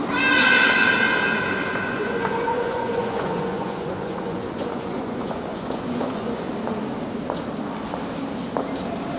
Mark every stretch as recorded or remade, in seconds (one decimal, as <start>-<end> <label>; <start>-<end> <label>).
0.0-1.7 recorded; 1.7-6.5 remade; 6.5-9.2 recorded